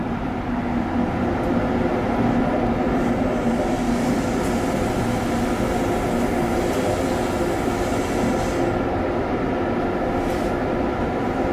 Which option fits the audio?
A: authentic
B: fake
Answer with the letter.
A